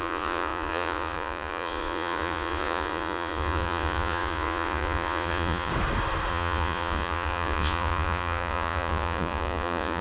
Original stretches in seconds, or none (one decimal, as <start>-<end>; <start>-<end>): 5.7-6.3